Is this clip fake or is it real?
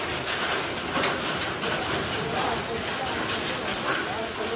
real